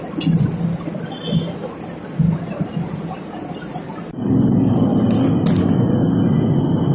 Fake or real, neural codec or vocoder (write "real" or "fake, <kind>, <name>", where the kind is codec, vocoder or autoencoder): real